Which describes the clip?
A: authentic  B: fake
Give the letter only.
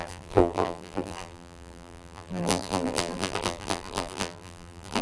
B